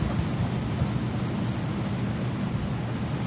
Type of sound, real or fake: real